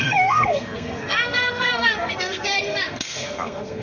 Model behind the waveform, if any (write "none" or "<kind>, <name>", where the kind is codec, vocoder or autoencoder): codec, SNAC